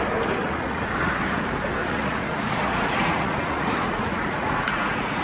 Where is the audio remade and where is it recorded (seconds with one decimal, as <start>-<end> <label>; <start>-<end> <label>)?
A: 0.0-0.4 recorded; 0.4-1.1 remade; 1.1-1.8 recorded; 1.8-5.2 remade